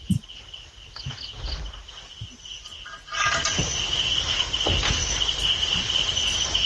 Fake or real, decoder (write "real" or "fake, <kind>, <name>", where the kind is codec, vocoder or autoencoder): real